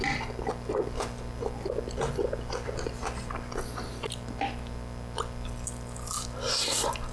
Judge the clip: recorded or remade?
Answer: recorded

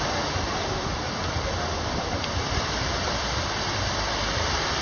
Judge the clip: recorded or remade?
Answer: remade